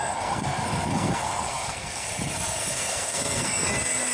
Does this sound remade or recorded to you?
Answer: remade